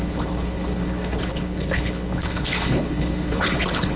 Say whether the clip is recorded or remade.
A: remade